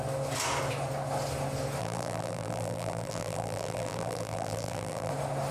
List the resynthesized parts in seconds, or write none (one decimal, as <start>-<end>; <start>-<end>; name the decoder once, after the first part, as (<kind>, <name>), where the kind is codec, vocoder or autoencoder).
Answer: 1.8-5.1 (vocoder, BigVGAN v2)